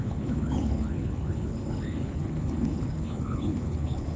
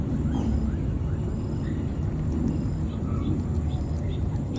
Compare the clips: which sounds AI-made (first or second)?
first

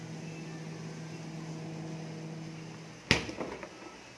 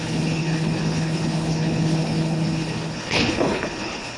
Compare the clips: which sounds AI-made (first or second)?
second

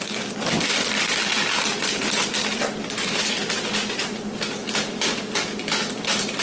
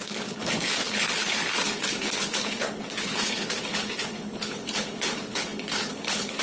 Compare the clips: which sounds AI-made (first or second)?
second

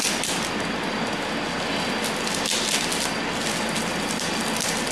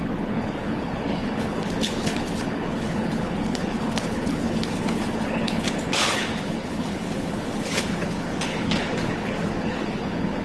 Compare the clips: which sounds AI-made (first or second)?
second